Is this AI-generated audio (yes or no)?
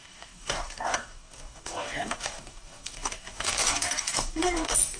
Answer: yes